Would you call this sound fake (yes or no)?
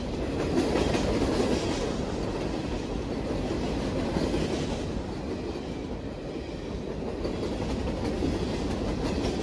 no